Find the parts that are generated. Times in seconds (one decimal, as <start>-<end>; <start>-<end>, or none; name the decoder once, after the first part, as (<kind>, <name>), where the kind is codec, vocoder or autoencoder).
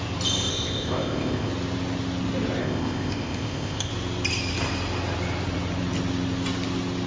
0.5-1.5 (codec, ZipCodec); 2.6-3.9